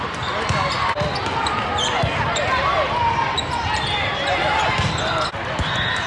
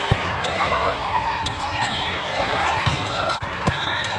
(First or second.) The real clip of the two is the first